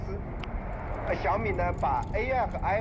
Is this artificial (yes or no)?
no